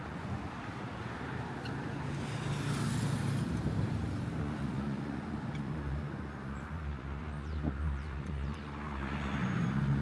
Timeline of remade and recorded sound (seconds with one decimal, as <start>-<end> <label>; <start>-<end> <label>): 0.0-0.4 remade; 0.4-4.4 recorded; 4.4-10.0 remade